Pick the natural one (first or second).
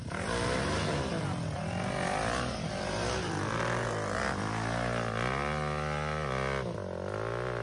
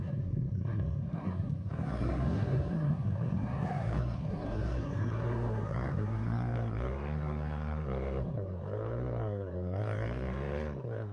first